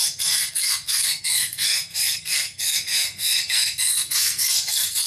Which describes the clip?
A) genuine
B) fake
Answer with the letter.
B